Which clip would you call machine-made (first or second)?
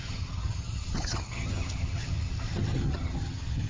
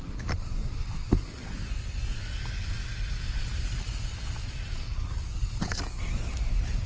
first